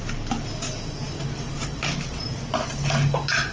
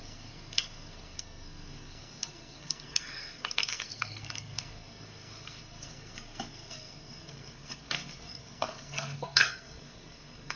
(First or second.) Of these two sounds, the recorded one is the first